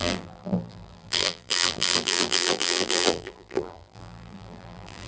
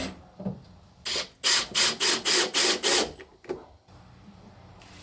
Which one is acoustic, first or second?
second